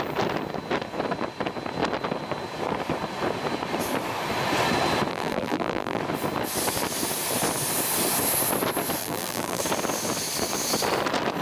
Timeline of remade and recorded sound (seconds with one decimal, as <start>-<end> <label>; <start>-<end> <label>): 0.0-5.1 recorded; 5.1-6.0 remade; 6.0-9.0 recorded; 9.0-9.6 remade; 9.6-11.4 recorded